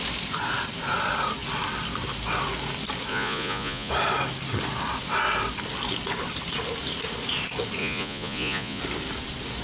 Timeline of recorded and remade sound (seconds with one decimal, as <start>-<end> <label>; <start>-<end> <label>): 0.0-3.1 recorded; 3.1-3.9 remade; 3.9-7.8 recorded; 7.8-8.8 remade; 8.8-9.6 recorded

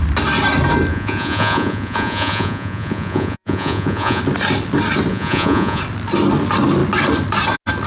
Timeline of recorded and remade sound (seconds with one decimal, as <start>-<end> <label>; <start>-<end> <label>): 0.0-0.9 recorded; 0.9-4.2 remade; 4.2-5.1 recorded; 5.1-5.8 remade; 5.8-7.9 recorded

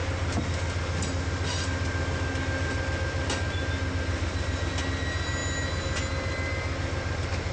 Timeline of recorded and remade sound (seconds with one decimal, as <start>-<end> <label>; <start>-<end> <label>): 0.0-7.5 recorded